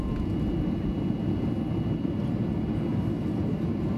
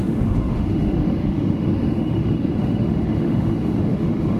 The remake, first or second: second